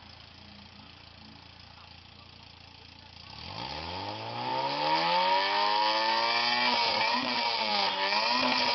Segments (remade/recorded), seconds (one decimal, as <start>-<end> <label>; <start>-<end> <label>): 0.0-7.1 recorded; 7.1-7.7 remade; 7.7-8.7 recorded